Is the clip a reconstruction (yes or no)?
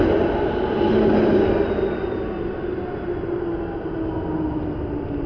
no